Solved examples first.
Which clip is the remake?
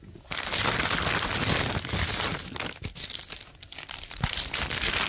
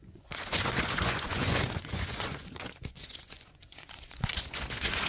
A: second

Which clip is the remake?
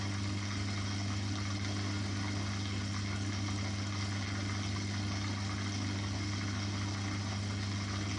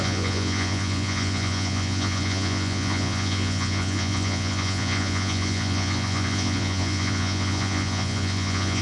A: second